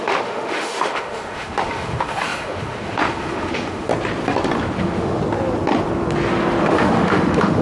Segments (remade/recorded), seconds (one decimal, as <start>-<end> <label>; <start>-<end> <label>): 0.0-3.9 remade; 3.9-4.8 recorded; 4.8-5.2 remade; 5.2-6.6 recorded; 6.6-7.6 remade